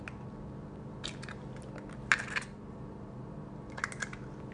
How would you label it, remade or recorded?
recorded